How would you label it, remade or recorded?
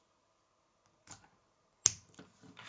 recorded